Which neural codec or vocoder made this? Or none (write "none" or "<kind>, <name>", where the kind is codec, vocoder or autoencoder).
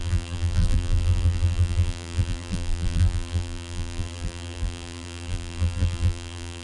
vocoder, BigVGAN v2